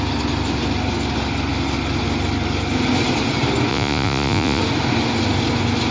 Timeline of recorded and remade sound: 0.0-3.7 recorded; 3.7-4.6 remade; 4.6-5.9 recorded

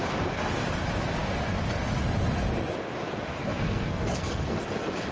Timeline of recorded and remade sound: 0.0-3.4 recorded; 3.4-4.6 remade; 4.6-5.1 recorded

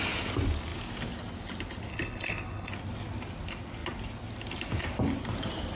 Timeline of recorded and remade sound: 0.0-1.9 recorded; 1.9-2.7 remade; 2.7-5.8 recorded

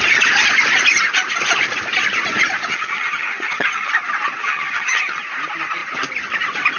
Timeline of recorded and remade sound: 0.0-2.7 recorded; 2.7-3.9 remade; 3.9-4.4 recorded; 4.4-5.2 remade; 5.2-6.8 recorded

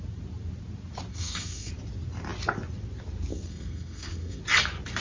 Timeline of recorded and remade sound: 0.0-1.1 recorded; 1.1-1.7 remade; 1.7-3.3 recorded; 3.3-4.4 remade; 4.4-5.0 recorded

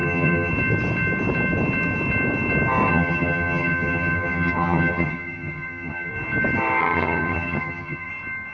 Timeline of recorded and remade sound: 0.0-0.5 remade; 0.5-2.9 recorded; 2.9-6.1 remade; 6.1-6.8 recorded; 6.8-8.1 remade; 8.1-8.5 recorded

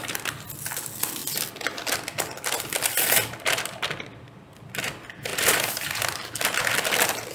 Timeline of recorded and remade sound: 0.0-7.3 recorded

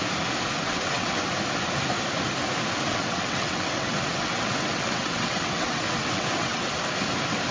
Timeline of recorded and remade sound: 0.0-0.5 recorded; 0.5-1.3 remade; 1.3-2.9 recorded; 2.9-6.7 remade; 6.7-7.5 recorded